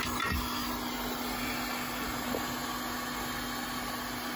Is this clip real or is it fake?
real